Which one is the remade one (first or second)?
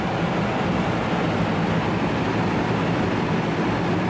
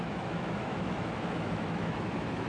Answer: second